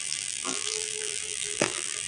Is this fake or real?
fake